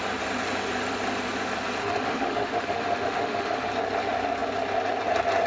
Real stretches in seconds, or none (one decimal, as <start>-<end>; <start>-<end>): 0.0-1.8; 3.7-5.5